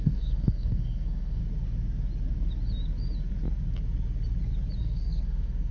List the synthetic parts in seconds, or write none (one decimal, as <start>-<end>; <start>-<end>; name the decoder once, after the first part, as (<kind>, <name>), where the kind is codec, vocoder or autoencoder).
0.0-1.4 (codec, SNAC); 4.8-5.7